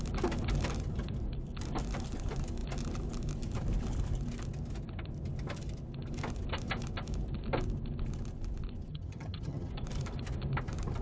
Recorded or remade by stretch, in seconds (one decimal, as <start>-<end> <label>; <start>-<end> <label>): 0.0-8.9 recorded; 8.9-9.7 remade; 9.7-11.0 recorded